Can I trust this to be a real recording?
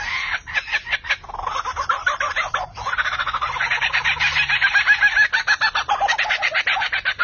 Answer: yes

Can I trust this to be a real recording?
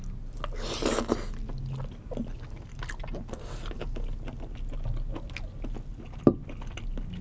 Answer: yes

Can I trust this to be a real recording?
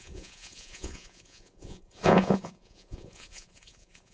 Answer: no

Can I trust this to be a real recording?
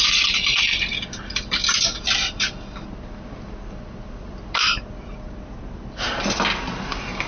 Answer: yes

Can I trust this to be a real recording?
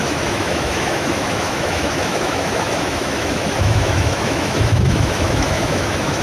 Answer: no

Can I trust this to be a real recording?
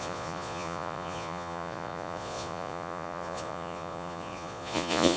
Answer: no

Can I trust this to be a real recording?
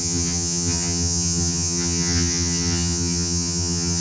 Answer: no